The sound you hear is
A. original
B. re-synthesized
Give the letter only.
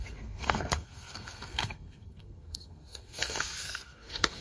B